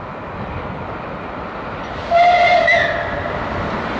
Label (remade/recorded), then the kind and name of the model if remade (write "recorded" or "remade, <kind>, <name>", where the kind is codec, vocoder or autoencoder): recorded